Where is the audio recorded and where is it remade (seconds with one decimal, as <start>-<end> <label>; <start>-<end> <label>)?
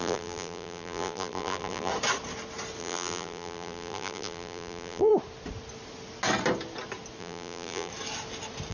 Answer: 0.0-1.9 remade; 1.9-2.8 recorded; 2.8-5.1 remade; 5.1-7.2 recorded; 7.2-7.9 remade; 7.9-8.7 recorded